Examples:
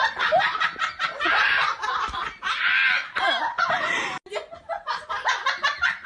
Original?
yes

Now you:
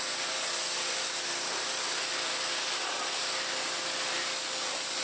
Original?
yes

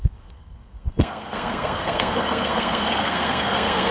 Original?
no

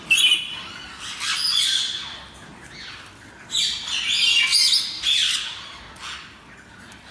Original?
yes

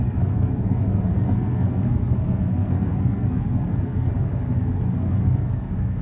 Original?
no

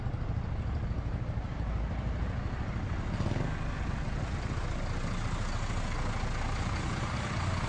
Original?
yes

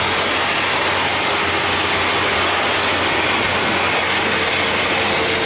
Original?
yes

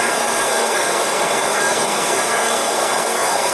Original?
no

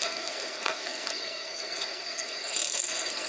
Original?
no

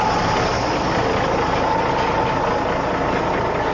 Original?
yes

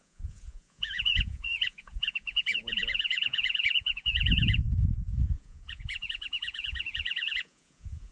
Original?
no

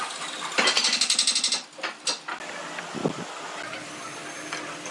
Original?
yes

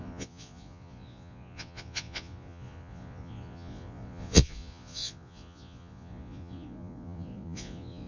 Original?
no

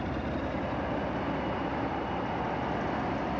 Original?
yes